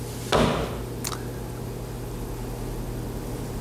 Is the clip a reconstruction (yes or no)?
no